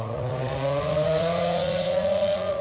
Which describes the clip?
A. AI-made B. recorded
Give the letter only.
A